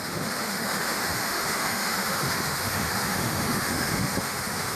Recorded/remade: remade